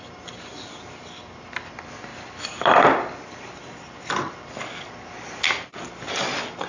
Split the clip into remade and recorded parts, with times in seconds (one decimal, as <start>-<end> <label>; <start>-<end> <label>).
0.0-6.7 recorded